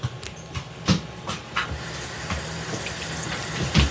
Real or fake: real